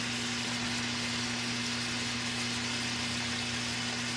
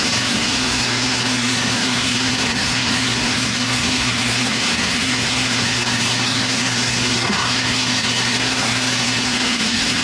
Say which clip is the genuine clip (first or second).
first